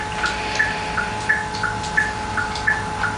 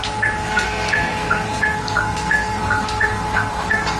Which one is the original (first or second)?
first